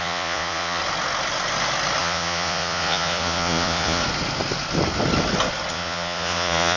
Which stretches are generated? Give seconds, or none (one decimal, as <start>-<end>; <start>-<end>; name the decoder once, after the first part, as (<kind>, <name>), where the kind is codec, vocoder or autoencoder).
0.0-0.8 (vocoder, Vocos); 2.0-4.0; 5.7-6.8